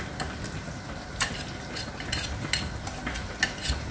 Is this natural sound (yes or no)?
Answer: yes